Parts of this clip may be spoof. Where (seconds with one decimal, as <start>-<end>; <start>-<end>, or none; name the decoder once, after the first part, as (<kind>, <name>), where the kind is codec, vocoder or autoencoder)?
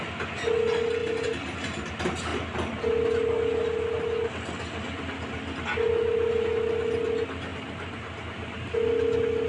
1.0-1.9 (vocoder, BigVGAN v2); 7.5-8.7